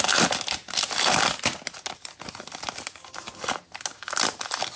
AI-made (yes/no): no